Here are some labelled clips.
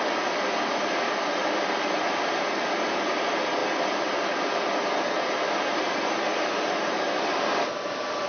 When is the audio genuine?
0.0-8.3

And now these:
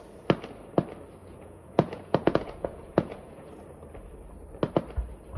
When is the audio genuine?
0.0-1.2; 3.5-5.4

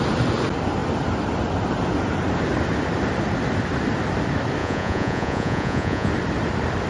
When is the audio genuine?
0.0-4.6; 6.1-6.9

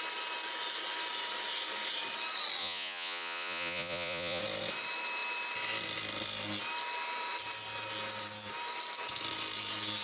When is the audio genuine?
0.0-2.6; 4.4-10.0

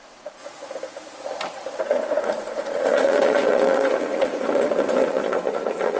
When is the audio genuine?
0.4-1.8